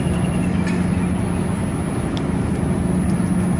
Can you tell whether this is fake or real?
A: real